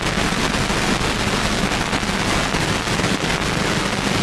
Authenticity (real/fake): real